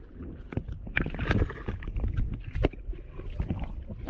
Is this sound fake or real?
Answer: real